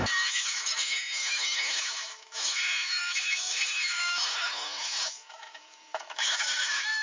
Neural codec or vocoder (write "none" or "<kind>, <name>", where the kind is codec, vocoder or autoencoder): autoencoder, DAC-VAE